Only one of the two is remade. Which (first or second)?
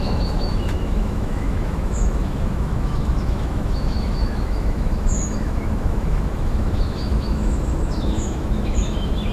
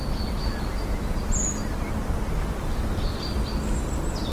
first